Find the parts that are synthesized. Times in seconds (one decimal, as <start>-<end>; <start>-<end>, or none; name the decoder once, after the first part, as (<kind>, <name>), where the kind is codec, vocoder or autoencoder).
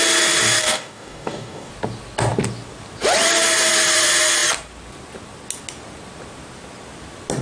0.6-1.7 (codec, DAC)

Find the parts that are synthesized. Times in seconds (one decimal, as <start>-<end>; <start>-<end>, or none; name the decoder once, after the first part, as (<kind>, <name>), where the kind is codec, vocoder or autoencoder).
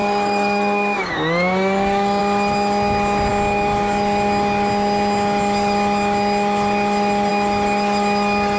0.0-2.2 (codec, DAC)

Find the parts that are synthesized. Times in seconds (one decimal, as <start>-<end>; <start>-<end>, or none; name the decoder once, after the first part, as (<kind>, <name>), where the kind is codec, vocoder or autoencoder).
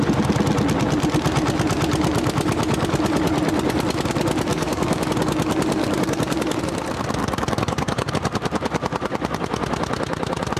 4.5-5.1 (codec, DAC); 5.8-6.6; 7.2-8.1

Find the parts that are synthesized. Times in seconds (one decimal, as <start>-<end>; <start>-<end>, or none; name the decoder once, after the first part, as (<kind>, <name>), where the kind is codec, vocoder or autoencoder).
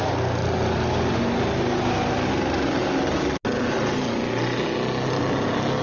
none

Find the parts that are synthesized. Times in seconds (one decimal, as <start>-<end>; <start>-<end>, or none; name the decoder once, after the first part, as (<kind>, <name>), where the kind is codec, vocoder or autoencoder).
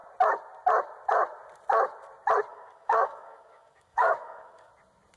2.5-4.7 (codec, DAC)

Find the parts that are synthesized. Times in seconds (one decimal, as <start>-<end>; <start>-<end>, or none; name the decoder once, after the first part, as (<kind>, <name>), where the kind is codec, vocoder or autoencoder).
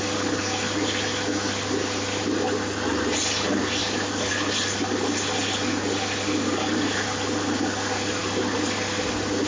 3.8-4.3 (codec, DAC)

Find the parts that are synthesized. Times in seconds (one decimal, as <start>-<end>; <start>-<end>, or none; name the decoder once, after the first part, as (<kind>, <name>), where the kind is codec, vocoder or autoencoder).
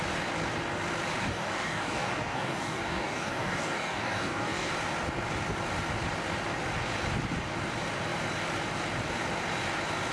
1.2-4.7 (codec, DAC)